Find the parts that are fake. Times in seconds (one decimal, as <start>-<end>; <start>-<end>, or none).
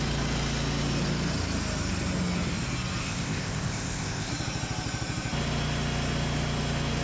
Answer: 3.0-4.3